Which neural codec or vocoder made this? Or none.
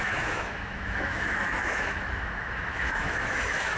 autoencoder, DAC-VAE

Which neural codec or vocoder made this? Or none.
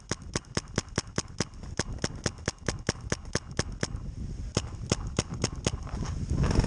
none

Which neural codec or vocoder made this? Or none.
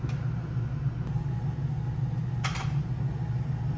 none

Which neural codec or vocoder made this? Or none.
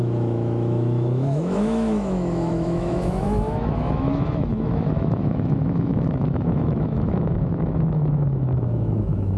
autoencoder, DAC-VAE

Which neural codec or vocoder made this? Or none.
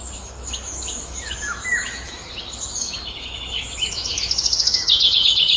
autoencoder, DAC-VAE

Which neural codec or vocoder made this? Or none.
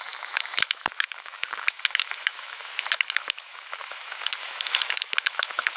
autoencoder, DAC-VAE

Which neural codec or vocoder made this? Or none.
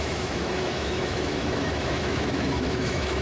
autoencoder, DAC-VAE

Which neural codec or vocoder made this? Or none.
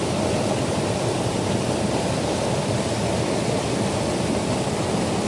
none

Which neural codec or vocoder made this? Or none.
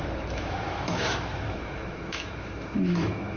autoencoder, DAC-VAE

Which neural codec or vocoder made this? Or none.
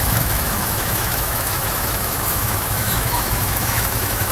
autoencoder, DAC-VAE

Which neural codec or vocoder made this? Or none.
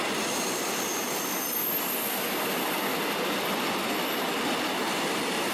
none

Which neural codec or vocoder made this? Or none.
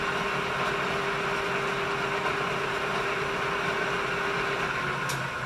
none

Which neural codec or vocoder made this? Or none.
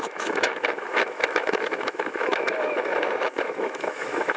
autoencoder, DAC-VAE